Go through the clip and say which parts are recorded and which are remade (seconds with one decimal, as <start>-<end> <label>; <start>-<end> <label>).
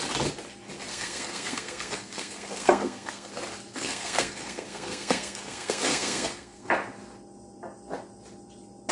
0.0-0.9 recorded; 0.9-3.3 remade; 3.3-3.7 recorded; 3.7-6.7 remade; 6.7-8.9 recorded